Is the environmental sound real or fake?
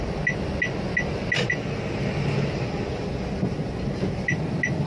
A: real